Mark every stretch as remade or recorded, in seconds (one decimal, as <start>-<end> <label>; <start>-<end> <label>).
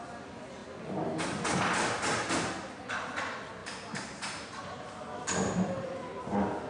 0.0-3.6 recorded; 3.6-4.6 remade; 4.6-6.7 recorded